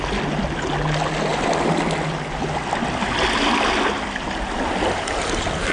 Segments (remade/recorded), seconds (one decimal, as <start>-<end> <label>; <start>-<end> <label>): 0.0-5.7 recorded